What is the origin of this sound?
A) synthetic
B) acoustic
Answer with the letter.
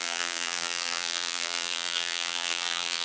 A